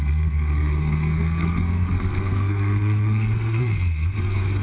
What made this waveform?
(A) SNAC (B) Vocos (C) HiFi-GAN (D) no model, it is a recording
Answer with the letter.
A